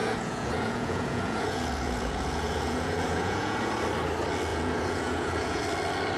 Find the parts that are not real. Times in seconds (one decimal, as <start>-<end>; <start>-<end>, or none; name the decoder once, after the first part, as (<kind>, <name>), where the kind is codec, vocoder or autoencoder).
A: 0.0-3.7 (vocoder, Vocos); 4.5-5.6

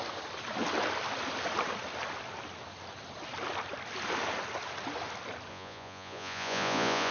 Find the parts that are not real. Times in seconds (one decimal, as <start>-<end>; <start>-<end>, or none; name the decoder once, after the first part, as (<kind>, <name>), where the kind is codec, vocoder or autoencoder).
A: 5.5-7.1 (vocoder, Vocos)

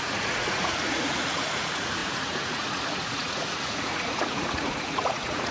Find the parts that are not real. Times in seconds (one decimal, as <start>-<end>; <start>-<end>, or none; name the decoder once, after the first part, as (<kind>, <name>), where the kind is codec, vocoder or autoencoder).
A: 0.0-5.5 (vocoder, Vocos)

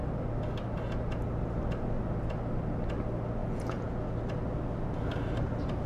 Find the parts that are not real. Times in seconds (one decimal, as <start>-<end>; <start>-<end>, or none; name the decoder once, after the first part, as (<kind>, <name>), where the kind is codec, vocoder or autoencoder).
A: 3.4-4.1 (vocoder, Vocos)

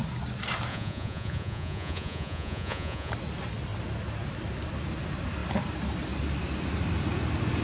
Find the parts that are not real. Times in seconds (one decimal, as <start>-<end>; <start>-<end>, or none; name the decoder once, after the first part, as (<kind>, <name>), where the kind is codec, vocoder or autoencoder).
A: 0.7-3.1 (vocoder, Vocos)